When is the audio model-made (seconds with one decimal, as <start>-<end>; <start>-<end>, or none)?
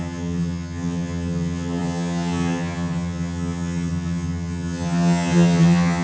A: 0.0-6.0